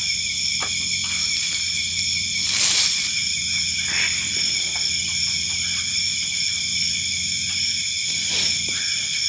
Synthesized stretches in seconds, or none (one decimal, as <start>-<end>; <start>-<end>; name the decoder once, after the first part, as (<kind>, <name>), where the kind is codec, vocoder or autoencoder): none